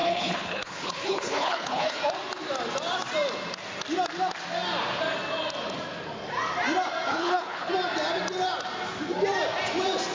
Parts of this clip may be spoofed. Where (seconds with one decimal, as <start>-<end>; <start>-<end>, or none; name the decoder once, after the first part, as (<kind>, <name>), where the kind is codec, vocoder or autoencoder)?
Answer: 0.0-2.0 (codec, HILCodec); 7.1-7.7